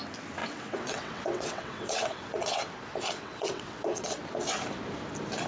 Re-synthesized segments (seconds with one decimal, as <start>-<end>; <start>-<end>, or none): 0.4-2.6; 3.2-4.2